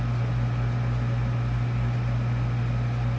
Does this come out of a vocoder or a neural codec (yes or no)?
no